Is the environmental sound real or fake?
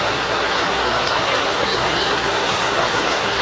fake